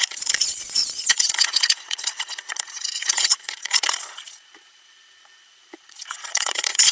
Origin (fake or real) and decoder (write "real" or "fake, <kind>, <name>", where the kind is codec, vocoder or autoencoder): fake, vocoder, Vocos